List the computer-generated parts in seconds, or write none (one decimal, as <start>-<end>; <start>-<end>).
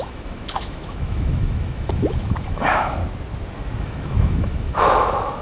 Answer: 0.0-3.0; 3.8-5.4